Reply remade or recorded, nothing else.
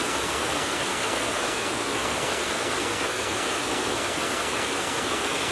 remade